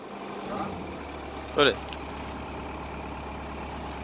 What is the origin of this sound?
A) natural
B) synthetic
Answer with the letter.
A